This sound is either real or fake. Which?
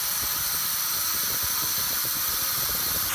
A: real